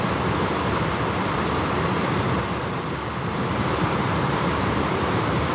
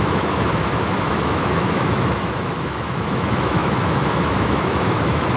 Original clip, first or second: first